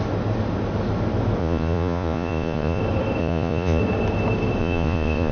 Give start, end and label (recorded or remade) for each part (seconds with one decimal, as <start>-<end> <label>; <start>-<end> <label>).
0.0-1.4 recorded; 1.4-2.8 remade; 2.8-3.2 recorded; 3.2-3.8 remade; 3.8-4.6 recorded; 4.6-5.3 remade